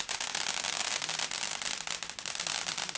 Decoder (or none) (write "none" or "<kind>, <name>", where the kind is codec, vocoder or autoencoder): none